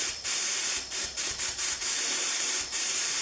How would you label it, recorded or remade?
remade